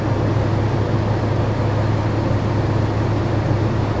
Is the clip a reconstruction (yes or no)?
no